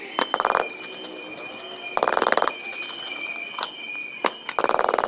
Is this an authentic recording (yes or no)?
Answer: yes